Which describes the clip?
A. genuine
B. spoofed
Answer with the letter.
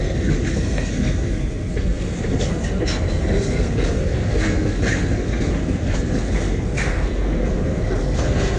B